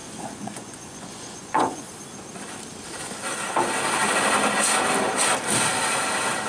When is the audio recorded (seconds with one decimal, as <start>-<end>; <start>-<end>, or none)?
1.9-6.5